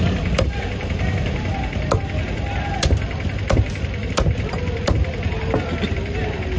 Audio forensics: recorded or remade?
recorded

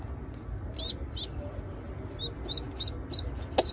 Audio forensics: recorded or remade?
recorded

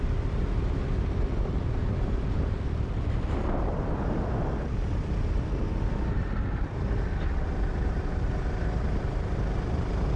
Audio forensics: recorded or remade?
recorded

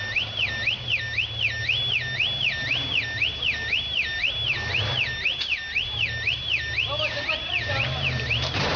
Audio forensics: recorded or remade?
recorded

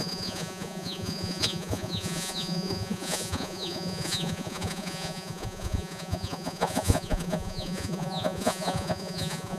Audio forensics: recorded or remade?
remade